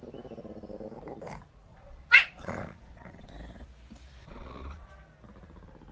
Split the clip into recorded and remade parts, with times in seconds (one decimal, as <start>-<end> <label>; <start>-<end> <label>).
0.0-1.7 recorded; 1.7-3.3 remade; 3.3-4.2 recorded; 4.2-4.9 remade; 4.9-5.9 recorded